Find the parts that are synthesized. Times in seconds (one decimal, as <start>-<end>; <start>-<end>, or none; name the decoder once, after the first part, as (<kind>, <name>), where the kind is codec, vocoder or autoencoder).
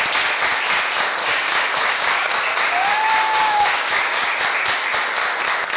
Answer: 1.2-4.4 (codec, DAC)